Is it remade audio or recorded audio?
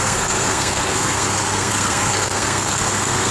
remade